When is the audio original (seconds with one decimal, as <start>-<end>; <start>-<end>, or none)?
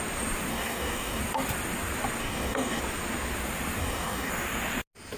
0.0-0.5; 1.2-2.2; 2.8-3.8; 4.3-5.2